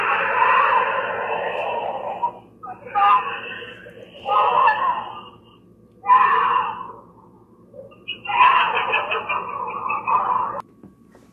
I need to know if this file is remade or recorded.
recorded